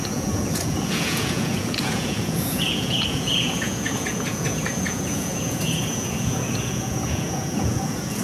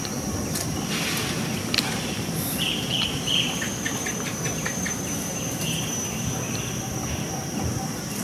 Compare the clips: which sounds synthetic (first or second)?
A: first